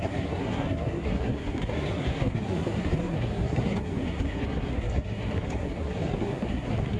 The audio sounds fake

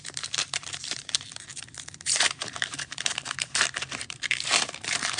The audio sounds fake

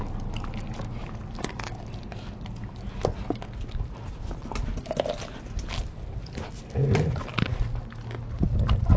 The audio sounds real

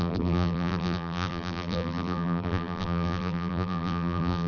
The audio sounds fake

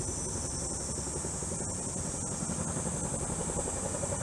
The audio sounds real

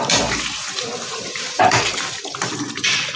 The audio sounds fake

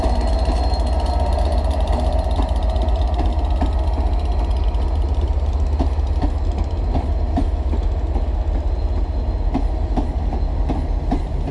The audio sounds real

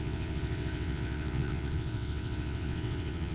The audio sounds fake